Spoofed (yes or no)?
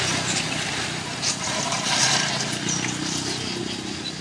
no